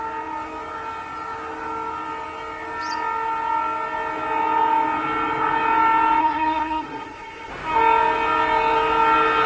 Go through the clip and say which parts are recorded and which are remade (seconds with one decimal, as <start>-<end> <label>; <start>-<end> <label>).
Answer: 0.0-6.2 recorded; 6.2-7.5 remade; 7.5-9.5 recorded